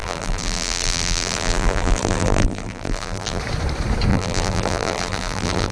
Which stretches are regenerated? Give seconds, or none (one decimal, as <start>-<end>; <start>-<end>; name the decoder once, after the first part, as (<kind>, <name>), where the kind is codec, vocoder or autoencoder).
0.0-3.4 (vocoder, BigVGAN v2); 4.1-5.7

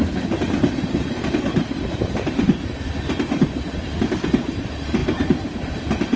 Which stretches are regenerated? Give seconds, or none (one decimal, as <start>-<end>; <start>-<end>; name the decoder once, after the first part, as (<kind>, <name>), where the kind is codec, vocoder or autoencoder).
0.0-3.7 (vocoder, BigVGAN v2); 5.0-6.2

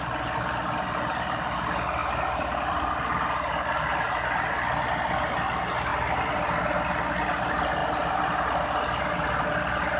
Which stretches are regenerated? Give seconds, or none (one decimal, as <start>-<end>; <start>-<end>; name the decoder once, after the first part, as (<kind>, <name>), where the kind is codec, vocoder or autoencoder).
2.0-2.9 (vocoder, BigVGAN v2); 5.9-6.6

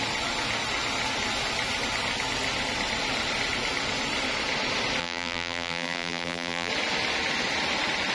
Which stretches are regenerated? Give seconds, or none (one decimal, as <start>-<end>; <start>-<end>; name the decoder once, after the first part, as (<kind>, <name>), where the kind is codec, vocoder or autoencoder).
5.0-6.7 (vocoder, BigVGAN v2)